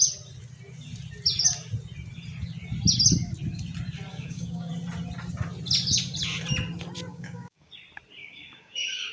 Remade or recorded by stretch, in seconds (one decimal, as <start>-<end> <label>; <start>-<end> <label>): 0.0-4.1 recorded; 4.1-4.7 remade; 4.7-7.1 recorded; 7.1-7.7 remade; 7.7-8.2 recorded; 8.2-9.1 remade